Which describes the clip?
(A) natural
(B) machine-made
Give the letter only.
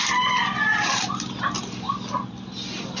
A